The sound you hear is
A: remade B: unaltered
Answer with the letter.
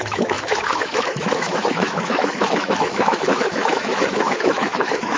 A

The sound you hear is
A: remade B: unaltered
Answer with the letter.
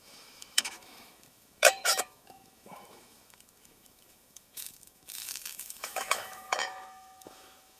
A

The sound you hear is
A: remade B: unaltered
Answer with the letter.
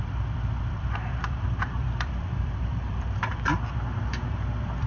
A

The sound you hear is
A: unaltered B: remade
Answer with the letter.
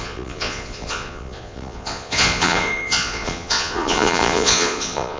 B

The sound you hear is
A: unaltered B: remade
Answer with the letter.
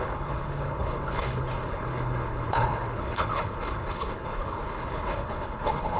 B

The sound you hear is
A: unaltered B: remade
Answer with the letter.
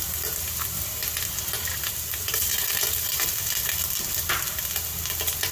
A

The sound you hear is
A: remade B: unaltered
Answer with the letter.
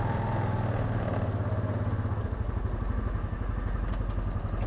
B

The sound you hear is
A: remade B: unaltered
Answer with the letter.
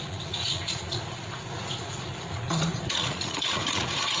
A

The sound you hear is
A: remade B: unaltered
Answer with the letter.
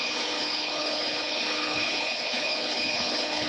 A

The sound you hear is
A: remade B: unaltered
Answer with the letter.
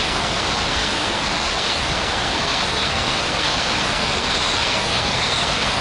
A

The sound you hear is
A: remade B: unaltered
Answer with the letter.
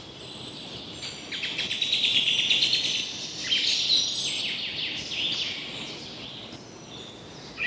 B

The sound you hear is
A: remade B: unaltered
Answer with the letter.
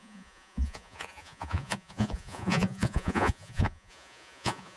A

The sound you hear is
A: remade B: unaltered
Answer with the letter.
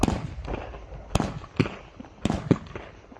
B